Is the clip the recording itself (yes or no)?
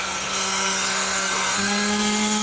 no